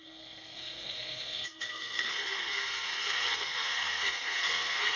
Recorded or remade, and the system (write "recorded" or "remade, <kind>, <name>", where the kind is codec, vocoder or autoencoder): remade, codec, SNAC